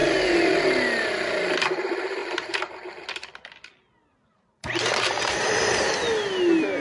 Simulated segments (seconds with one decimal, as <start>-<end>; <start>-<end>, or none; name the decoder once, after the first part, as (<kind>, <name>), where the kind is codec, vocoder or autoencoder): 0.0-0.6 (vocoder, BigVGAN v2); 2.2-2.7; 4.1-5.8